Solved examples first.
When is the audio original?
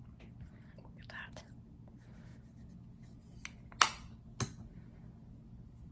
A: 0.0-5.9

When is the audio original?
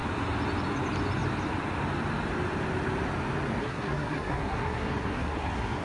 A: 0.0-3.6